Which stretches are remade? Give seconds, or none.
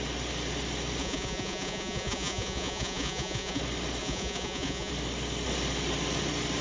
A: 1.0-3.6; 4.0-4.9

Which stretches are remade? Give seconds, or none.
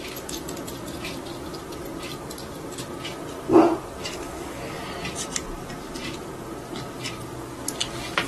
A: 4.0-4.8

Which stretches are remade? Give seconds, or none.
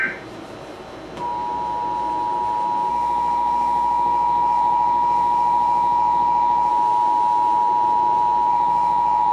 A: 2.9-6.7; 8.5-9.3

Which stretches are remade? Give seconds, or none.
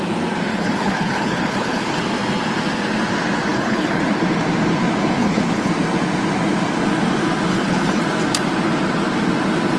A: 0.5-2.0; 3.5-4.0; 5.2-5.7; 7.5-8.0